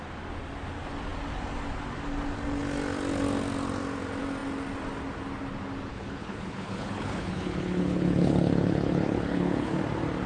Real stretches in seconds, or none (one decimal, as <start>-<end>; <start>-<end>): 0.0-5.9; 9.8-10.3